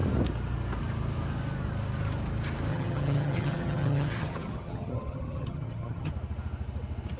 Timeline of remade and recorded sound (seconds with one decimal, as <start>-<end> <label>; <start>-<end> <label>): 0.0-2.7 recorded; 2.7-6.1 remade; 6.1-7.2 recorded

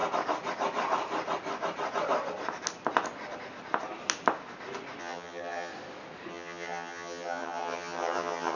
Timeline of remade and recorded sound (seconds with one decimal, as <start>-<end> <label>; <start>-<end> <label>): 0.0-5.0 recorded; 5.0-5.7 remade; 5.7-6.3 recorded; 6.3-8.6 remade